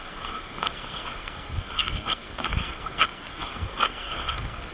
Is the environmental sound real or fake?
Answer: fake